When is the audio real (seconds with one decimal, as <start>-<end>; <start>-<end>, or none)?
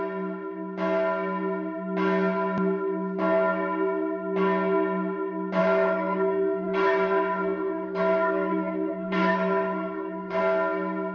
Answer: 0.0-5.6; 10.4-11.1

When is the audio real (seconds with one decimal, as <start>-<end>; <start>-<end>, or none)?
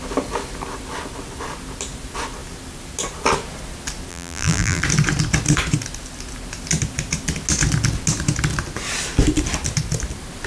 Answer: 0.0-4.1; 4.8-10.5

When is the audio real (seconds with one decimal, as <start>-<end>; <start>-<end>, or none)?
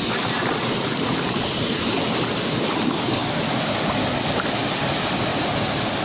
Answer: 0.0-6.0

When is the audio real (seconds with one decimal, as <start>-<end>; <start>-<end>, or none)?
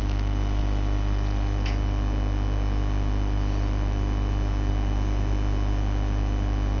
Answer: 0.0-6.8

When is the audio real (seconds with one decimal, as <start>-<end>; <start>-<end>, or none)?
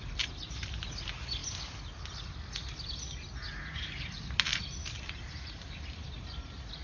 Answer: 0.0-6.8